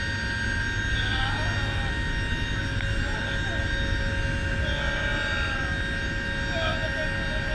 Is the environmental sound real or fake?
real